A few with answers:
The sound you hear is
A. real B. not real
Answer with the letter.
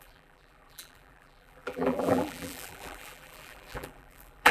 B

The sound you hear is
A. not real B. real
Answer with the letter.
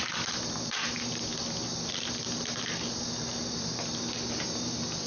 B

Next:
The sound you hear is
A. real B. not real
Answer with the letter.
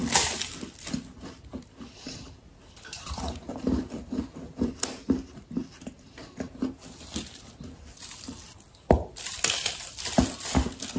A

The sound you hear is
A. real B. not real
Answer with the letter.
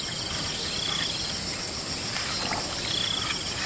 A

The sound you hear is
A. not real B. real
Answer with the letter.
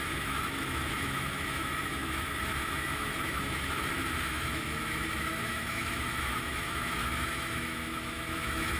A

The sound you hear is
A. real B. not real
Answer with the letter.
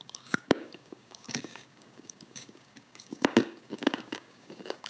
B